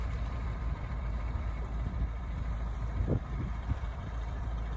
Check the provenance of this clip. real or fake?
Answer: fake